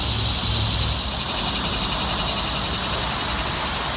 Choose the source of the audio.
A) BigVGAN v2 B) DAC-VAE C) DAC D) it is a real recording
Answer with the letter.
D